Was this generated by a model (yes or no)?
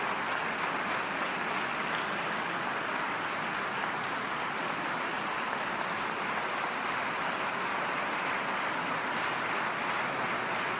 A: no